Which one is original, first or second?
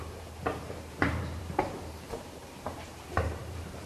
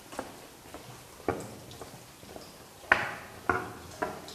second